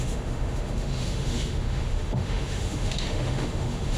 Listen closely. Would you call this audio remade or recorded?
remade